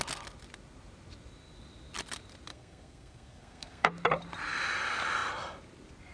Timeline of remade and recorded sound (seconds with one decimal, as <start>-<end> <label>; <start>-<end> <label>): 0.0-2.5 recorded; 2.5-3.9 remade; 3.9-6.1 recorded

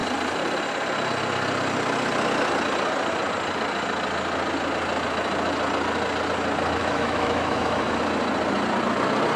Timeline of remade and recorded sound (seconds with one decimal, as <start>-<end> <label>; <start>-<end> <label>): 0.0-6.8 recorded; 6.8-8.0 remade; 8.0-9.4 recorded

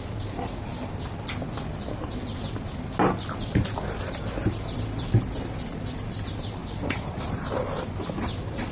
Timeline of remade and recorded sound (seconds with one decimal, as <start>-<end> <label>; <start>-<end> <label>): 0.0-6.6 recorded; 6.6-7.8 remade; 7.8-8.7 recorded